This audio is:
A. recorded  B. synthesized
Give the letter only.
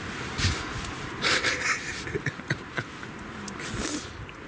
A